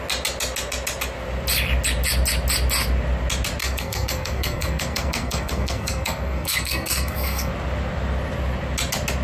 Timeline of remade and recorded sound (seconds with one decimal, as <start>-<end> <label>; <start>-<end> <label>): 0.0-3.6 recorded; 3.6-7.5 remade; 7.5-9.2 recorded